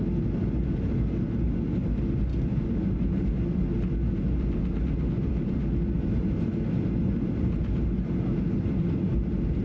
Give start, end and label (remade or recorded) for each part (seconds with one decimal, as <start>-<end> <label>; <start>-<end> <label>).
0.0-9.6 recorded